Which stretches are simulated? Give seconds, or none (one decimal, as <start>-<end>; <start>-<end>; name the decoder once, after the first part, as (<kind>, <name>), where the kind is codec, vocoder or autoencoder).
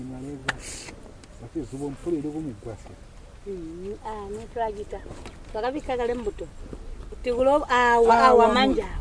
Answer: none